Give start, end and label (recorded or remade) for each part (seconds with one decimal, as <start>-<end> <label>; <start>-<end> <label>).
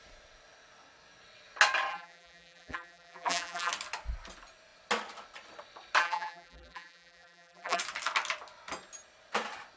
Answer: 0.0-1.9 recorded; 1.9-3.7 remade; 3.7-6.0 recorded; 6.0-7.8 remade; 7.8-9.8 recorded